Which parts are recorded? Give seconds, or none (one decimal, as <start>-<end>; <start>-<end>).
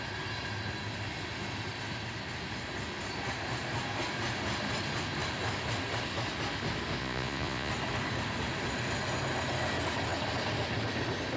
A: 0.0-7.0; 7.7-11.4